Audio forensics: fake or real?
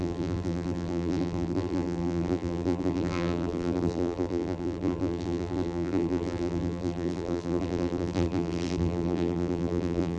fake